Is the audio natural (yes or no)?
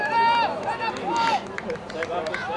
yes